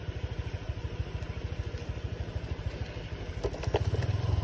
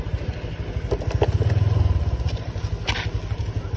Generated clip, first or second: first